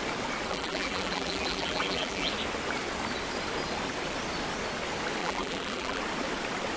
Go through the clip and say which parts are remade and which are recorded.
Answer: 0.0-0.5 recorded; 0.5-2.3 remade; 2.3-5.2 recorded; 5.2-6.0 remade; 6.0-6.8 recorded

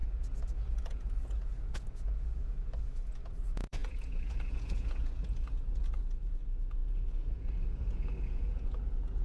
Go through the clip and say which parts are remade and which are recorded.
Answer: 0.0-9.2 remade

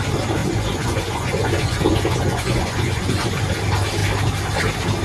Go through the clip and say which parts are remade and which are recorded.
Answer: 0.0-0.4 recorded; 0.4-3.4 remade; 3.4-5.0 recorded

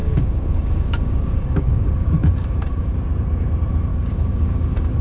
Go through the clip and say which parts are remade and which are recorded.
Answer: 0.0-2.9 remade; 2.9-3.9 recorded; 3.9-5.0 remade

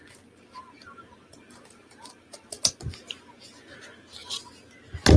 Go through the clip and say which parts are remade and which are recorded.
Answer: 0.0-5.2 recorded

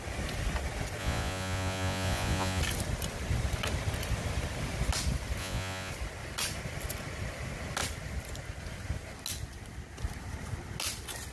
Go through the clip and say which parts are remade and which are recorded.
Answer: 0.0-1.0 recorded; 1.0-2.6 remade; 2.6-5.4 recorded; 5.4-5.9 remade; 5.9-11.3 recorded